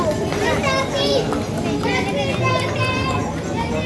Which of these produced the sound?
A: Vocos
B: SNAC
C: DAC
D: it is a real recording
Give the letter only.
D